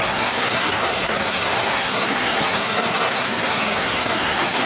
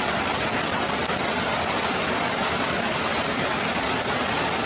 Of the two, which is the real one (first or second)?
second